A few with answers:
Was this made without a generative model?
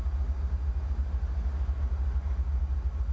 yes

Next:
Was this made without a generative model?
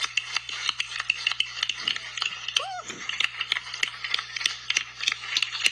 yes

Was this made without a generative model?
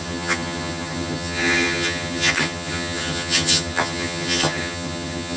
no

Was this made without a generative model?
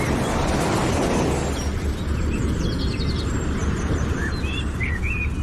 yes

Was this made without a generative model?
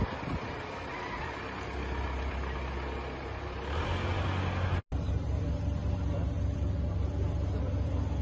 yes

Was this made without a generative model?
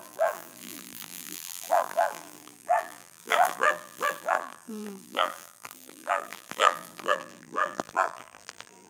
no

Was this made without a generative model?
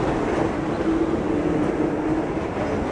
yes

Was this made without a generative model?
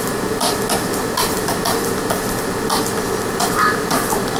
no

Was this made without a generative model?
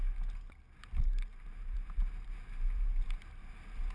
yes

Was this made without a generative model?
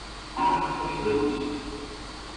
yes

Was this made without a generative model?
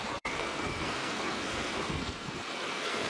no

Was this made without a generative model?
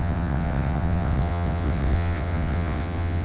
no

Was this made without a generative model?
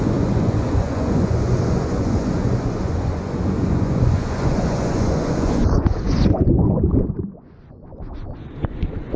no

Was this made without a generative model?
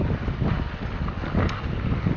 yes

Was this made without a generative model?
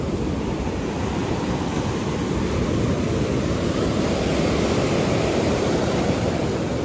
no